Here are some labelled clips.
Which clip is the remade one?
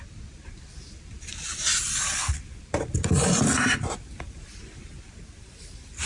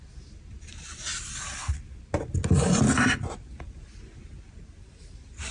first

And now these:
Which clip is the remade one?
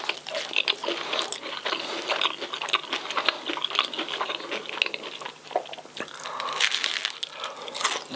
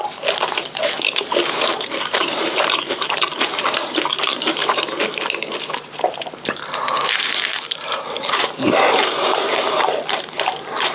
second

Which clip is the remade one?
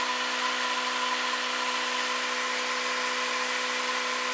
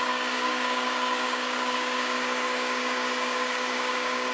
second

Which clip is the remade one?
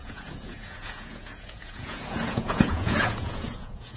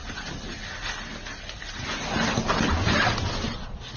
first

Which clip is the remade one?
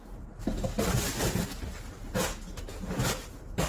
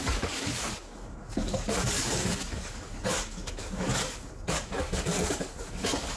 second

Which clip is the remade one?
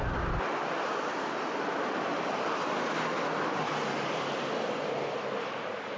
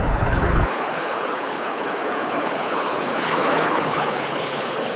second